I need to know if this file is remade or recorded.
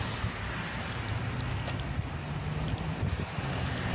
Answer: recorded